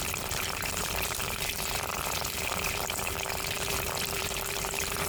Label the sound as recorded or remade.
remade